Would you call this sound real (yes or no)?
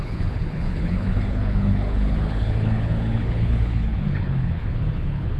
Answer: no